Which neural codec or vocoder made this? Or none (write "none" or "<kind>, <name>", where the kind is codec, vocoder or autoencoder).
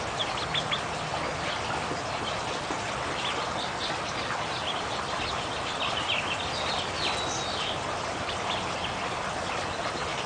none